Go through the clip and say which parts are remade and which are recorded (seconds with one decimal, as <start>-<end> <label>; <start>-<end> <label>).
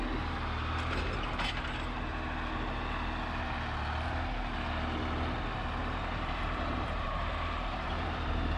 0.0-5.8 recorded; 5.8-8.6 remade